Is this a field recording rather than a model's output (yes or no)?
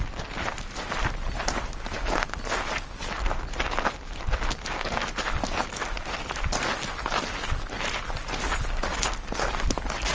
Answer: yes